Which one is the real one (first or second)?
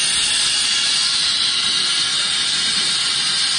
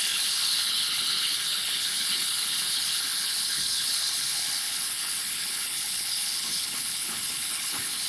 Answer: first